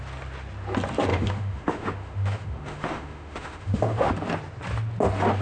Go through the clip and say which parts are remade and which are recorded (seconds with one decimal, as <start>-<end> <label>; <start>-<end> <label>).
0.0-1.1 recorded; 1.1-4.1 remade; 4.1-5.4 recorded